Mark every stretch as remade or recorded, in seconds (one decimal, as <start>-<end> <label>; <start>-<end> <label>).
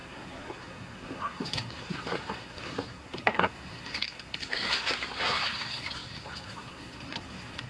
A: 0.0-7.7 remade